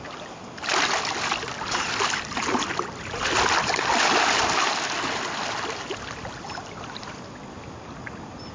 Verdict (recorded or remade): recorded